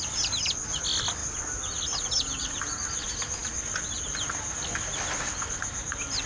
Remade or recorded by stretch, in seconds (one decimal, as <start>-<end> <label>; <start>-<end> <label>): 0.0-1.2 recorded; 1.2-2.6 remade; 2.6-6.3 recorded